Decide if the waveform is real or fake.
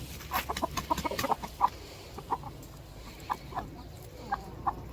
real